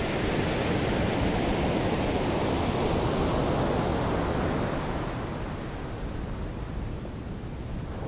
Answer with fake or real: real